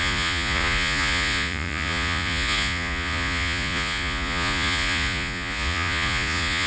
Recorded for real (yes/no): no